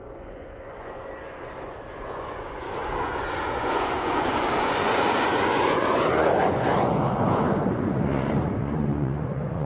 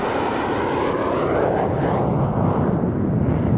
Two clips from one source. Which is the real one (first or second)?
second